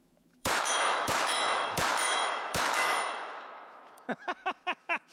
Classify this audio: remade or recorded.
remade